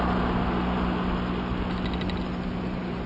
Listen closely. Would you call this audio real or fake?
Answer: real